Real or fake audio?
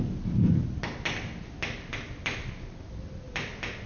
real